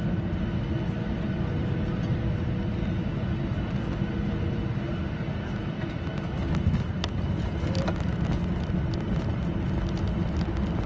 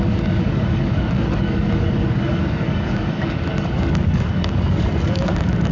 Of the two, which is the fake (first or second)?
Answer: second